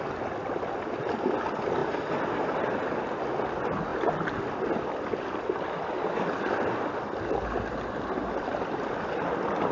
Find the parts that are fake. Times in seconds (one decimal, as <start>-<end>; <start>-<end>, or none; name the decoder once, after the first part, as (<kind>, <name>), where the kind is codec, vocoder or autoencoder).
none